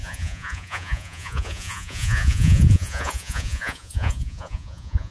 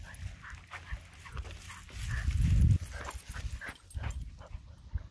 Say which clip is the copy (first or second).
first